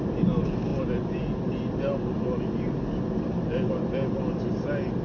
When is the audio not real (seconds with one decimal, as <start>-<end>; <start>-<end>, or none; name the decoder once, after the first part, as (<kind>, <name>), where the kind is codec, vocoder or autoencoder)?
none